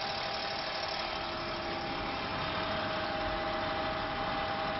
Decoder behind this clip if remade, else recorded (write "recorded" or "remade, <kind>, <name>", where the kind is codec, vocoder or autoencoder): recorded